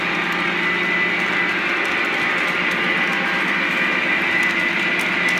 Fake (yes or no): no